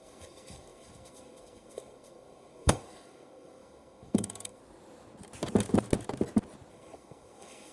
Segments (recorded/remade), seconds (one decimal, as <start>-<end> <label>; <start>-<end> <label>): 0.0-4.6 remade; 4.6-6.7 recorded; 6.7-7.7 remade